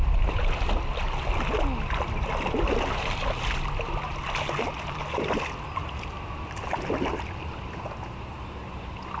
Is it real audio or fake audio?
real